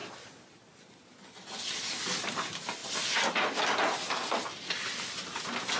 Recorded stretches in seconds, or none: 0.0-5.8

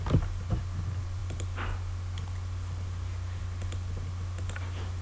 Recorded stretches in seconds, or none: 0.0-5.0